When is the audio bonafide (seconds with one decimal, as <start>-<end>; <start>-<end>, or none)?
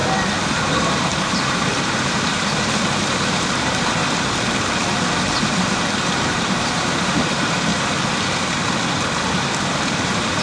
0.0-0.5; 4.0-5.3; 7.7-9.3